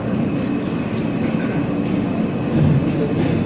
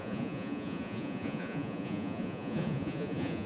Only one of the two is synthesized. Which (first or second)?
second